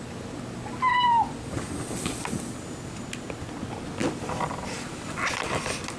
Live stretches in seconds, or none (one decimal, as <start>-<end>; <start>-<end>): 0.0-4.0; 5.3-6.0